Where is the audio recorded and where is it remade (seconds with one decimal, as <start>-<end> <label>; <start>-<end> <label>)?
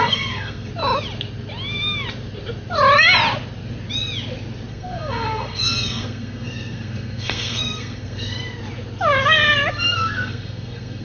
0.0-0.7 remade; 0.7-4.7 recorded; 4.7-8.4 remade; 8.4-9.7 recorded; 9.7-11.0 remade